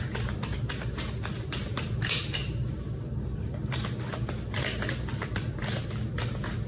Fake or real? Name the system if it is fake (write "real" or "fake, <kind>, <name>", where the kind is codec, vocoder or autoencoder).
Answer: fake, vocoder, BigVGAN v2